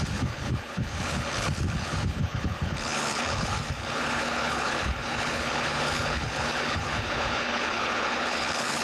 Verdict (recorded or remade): remade